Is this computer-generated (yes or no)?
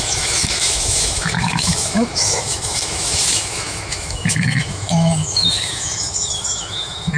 yes